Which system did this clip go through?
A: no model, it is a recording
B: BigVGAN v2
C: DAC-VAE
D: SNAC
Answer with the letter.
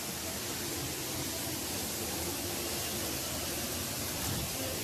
A